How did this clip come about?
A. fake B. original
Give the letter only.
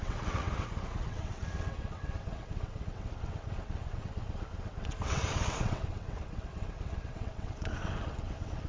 A